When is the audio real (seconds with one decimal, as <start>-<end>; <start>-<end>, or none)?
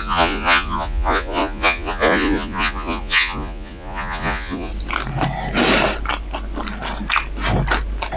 4.7-8.2